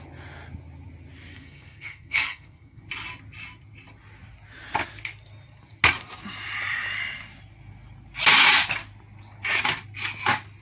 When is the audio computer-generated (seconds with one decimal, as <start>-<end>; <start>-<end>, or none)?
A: 1.3-2.8

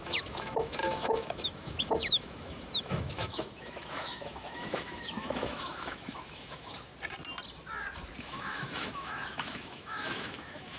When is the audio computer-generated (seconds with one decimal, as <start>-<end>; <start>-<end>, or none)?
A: 0.0-6.9; 8.2-10.8